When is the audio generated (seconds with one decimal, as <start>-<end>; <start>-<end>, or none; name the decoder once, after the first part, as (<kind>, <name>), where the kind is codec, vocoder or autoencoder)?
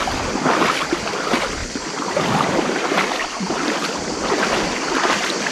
none